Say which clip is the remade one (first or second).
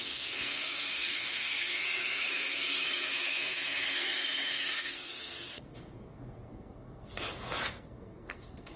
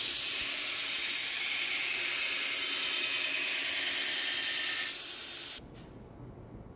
first